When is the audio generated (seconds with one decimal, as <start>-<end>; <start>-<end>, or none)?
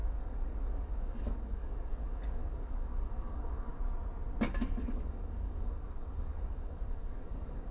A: 0.0-3.7; 4.5-7.7